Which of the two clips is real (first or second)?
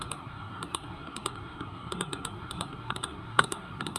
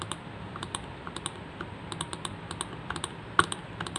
second